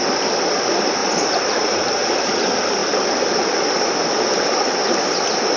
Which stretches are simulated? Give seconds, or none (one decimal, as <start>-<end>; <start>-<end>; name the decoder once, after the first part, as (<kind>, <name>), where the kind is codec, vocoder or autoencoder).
1.0-2.3 (vocoder, BigVGAN v2)